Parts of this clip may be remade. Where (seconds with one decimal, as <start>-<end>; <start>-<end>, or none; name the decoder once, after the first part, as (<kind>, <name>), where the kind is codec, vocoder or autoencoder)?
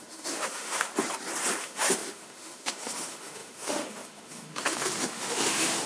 0.0-0.9 (autoencoder, DAC-VAE); 1.6-5.9